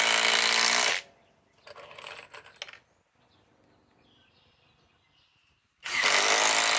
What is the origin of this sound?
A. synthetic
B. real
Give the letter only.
B